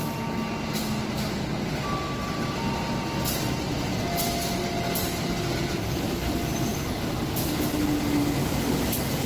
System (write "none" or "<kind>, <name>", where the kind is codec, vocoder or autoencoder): none